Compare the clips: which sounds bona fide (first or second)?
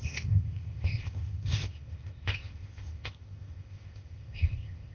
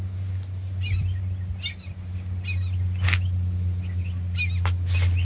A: second